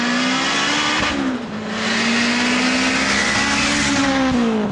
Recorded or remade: recorded